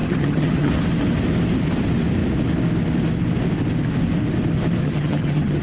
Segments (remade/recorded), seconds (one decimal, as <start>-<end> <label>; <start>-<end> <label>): 0.0-0.7 remade; 0.7-4.8 recorded; 4.8-5.6 remade